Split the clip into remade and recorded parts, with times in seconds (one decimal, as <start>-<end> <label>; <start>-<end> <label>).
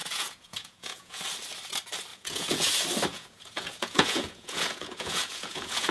0.0-1.2 remade; 1.2-2.1 recorded; 2.1-2.7 remade; 2.7-3.1 recorded; 3.1-5.9 remade